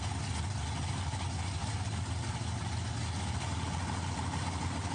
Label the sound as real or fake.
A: real